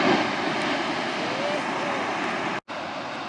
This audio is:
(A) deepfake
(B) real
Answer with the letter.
B